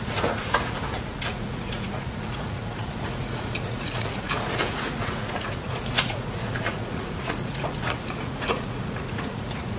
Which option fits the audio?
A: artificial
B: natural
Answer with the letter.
A